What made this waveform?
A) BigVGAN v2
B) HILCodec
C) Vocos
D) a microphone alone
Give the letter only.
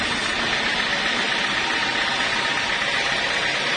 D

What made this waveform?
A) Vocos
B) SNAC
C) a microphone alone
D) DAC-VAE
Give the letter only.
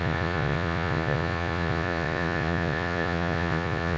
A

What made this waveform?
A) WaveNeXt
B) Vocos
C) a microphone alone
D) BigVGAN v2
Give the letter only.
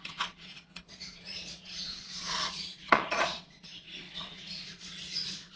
B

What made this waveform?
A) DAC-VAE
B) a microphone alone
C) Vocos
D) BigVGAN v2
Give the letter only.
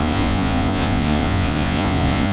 C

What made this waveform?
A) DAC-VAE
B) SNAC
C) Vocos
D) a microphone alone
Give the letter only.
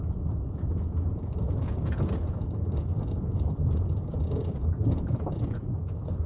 C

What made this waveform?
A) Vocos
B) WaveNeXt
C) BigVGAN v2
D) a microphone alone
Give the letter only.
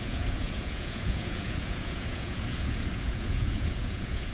A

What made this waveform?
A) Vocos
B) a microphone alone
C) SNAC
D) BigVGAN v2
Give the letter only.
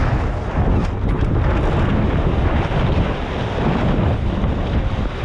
B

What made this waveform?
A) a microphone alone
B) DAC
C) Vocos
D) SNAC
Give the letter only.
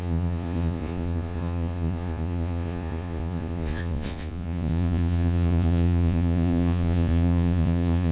C